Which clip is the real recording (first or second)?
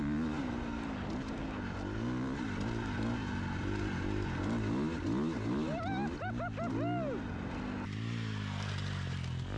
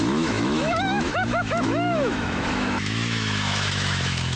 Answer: first